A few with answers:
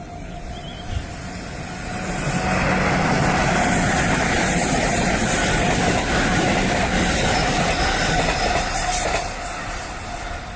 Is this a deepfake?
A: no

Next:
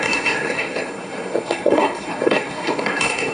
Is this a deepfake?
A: yes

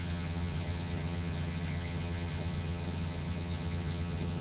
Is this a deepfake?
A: yes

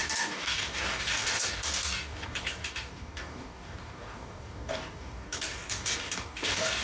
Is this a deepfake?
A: yes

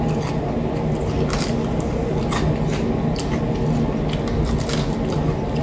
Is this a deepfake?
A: no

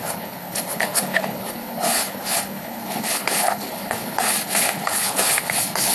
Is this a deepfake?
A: yes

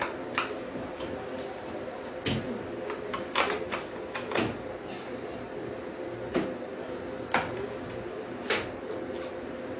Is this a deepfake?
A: no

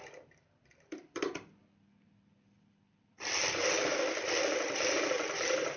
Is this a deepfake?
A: yes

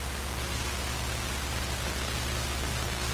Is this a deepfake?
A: no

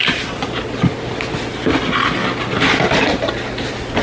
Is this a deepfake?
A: no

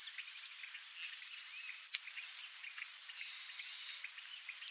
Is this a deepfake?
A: no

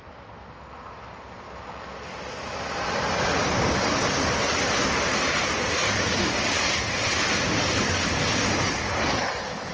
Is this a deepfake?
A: no